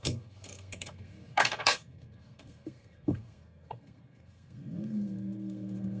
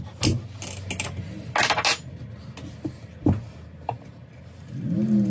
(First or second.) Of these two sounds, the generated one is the first